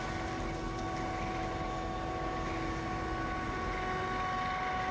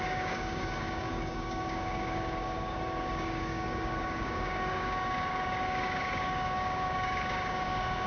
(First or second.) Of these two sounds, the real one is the first